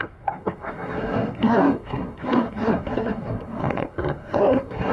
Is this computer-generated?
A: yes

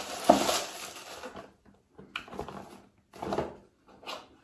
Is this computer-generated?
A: no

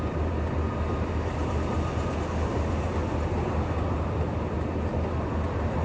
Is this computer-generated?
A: no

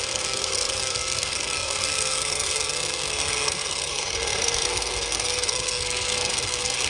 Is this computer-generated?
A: yes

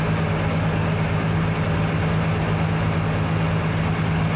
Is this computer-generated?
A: no